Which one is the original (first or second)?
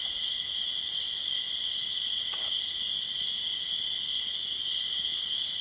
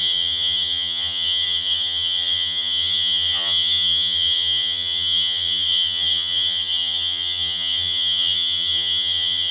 first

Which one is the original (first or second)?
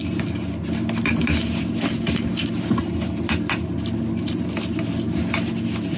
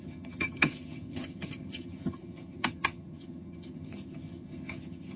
first